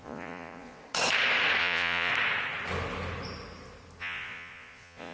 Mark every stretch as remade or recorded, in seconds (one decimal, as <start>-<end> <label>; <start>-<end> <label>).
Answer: 0.0-0.8 remade; 0.8-1.6 recorded; 1.6-2.1 remade; 2.1-4.0 recorded; 4.0-5.1 remade